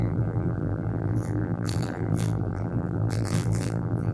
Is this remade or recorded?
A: remade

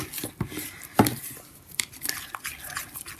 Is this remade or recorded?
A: recorded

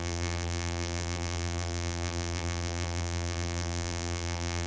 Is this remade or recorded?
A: remade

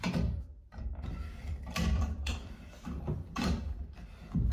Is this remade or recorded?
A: remade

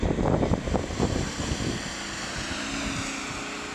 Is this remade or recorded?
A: recorded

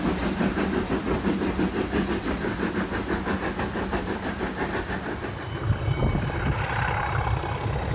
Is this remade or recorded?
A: recorded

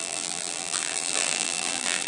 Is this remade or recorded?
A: remade